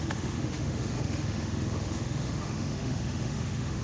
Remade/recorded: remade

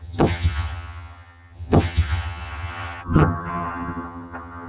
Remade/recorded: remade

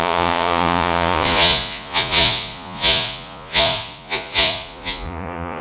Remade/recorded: remade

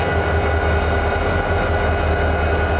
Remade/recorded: recorded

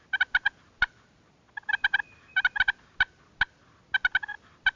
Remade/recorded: recorded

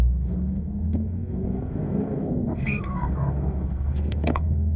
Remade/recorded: remade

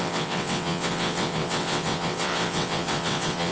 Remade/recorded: remade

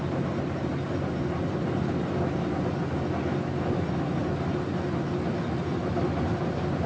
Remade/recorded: recorded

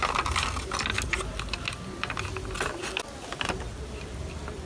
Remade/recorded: recorded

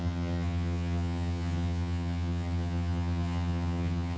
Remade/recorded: remade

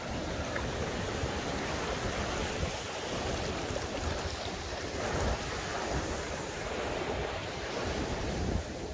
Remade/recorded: recorded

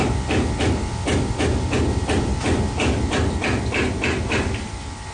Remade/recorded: recorded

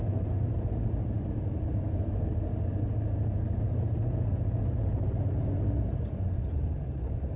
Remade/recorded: recorded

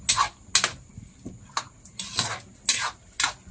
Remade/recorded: recorded